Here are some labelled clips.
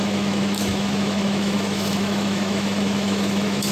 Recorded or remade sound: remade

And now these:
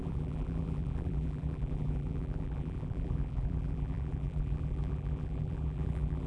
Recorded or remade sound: remade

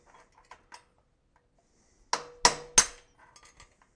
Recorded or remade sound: recorded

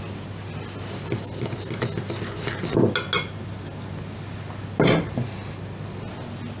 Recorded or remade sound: recorded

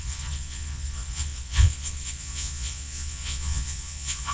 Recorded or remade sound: remade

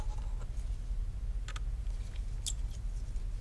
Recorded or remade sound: recorded